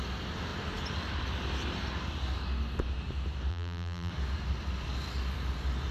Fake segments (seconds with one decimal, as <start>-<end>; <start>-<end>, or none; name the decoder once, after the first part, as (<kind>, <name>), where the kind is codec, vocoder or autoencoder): 3.5-4.1 (vocoder, BigVGAN v2)